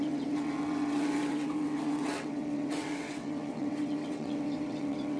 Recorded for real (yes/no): no